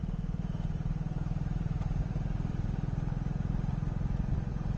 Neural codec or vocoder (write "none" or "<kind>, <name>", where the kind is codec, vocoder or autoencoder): none